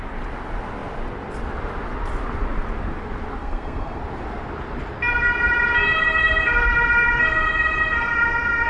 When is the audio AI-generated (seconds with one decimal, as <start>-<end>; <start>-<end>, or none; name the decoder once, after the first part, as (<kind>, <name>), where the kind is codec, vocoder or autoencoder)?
3.4-4.0 (codec, SNAC)